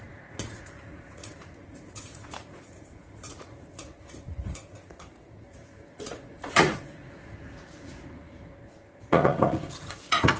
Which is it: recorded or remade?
remade